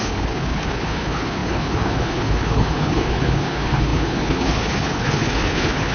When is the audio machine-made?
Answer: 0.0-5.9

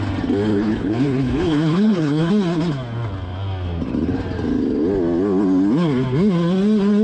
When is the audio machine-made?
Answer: 0.5-2.3

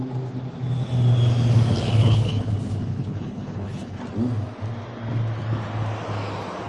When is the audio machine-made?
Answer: 2.0-2.5; 2.9-4.0

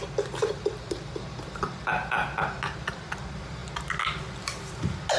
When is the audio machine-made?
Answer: none

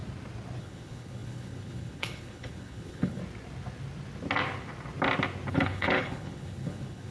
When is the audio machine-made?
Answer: 0.6-3.2; 5.5-7.1

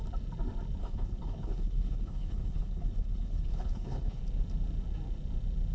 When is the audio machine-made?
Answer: 0.8-4.2